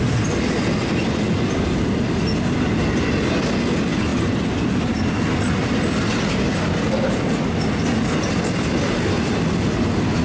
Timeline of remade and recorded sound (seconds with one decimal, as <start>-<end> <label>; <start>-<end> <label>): 0.0-10.2 recorded